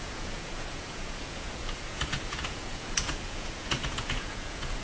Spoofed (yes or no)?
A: yes